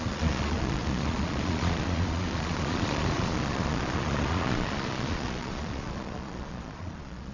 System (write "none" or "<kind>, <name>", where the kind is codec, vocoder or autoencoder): vocoder, Vocos